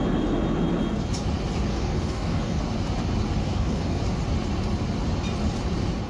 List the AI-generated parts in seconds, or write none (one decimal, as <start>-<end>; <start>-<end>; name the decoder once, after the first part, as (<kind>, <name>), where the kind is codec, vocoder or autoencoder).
1.7-2.6 (codec, DAC); 3.4-4.0